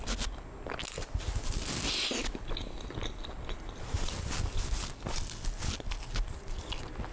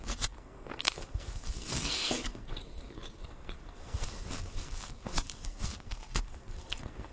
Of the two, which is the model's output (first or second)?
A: second